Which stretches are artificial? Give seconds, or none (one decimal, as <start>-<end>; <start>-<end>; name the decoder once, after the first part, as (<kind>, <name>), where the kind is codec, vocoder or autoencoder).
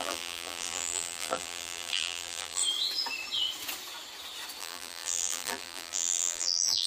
0.0-2.6 (vocoder, BigVGAN v2); 4.6-6.9